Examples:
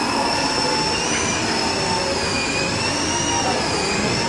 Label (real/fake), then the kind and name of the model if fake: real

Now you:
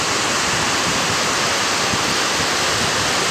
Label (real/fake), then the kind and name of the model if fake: real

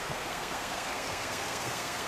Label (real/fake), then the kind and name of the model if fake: fake, codec, SNAC